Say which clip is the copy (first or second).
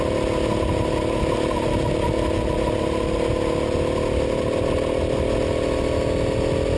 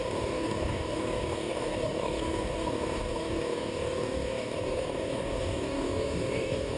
second